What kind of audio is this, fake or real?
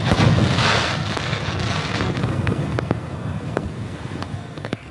fake